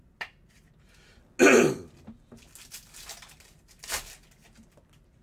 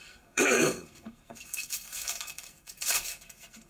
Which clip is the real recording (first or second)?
first